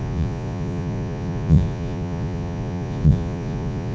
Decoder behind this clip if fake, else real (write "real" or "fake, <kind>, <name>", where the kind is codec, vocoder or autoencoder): fake, vocoder, Vocos